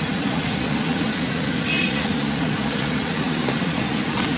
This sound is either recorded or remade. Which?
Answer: remade